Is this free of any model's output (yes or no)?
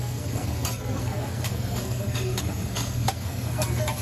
no